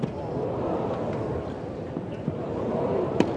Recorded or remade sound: remade